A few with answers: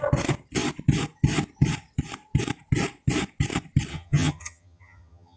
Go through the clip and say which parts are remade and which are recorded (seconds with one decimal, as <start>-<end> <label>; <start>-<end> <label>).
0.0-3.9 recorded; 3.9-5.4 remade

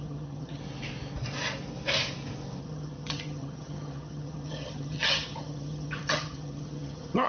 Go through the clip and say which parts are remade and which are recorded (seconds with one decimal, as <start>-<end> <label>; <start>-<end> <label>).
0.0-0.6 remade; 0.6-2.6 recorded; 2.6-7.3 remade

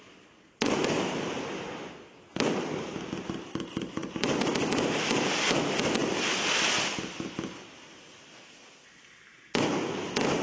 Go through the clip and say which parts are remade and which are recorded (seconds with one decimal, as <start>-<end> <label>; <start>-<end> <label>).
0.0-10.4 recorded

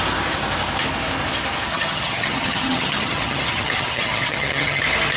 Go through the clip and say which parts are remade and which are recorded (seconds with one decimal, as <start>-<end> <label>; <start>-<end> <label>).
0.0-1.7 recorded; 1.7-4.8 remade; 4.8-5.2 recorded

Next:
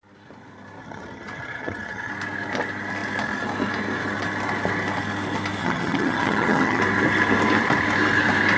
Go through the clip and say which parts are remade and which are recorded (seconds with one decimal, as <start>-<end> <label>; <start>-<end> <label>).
0.0-0.8 recorded; 0.8-2.1 remade; 2.1-5.6 recorded; 5.6-6.8 remade; 6.8-8.6 recorded

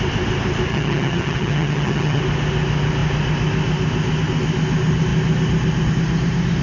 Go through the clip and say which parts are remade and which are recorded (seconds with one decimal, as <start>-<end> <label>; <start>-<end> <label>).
0.0-0.7 recorded; 0.7-2.2 remade; 2.2-6.6 recorded

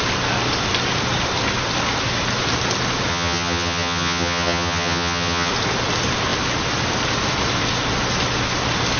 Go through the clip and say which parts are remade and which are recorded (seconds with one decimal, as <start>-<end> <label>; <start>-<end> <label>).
0.0-3.1 recorded; 3.1-5.5 remade; 5.5-9.0 recorded

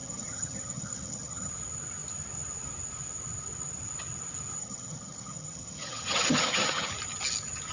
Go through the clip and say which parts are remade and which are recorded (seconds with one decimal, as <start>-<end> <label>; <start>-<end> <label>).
0.0-1.5 remade; 1.5-4.6 recorded; 4.6-6.9 remade; 6.9-7.7 recorded